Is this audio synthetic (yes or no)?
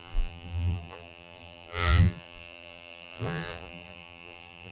yes